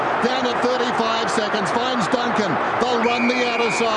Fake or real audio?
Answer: real